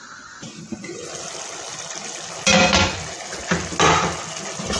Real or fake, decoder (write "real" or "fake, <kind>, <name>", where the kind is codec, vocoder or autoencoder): real